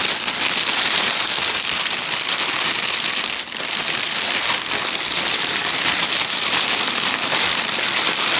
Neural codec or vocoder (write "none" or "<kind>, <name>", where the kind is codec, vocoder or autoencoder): vocoder, BigVGAN v2